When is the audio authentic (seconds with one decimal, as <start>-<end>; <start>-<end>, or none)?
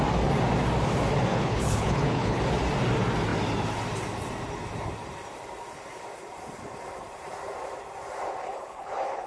0.0-1.3; 2.4-8.4